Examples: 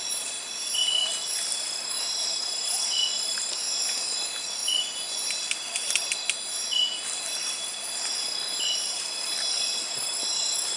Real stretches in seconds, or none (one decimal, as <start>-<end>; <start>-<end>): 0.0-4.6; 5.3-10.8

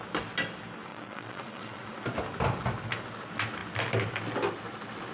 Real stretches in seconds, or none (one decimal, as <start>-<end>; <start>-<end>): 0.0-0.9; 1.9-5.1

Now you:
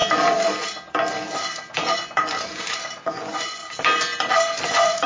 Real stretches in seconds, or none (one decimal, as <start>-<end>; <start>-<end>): 0.0-3.1; 3.6-4.6

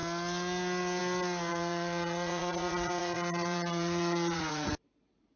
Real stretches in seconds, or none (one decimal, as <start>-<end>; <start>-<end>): 0.0-1.5; 4.7-5.4